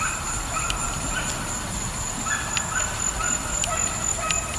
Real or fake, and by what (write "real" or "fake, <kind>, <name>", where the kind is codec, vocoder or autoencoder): real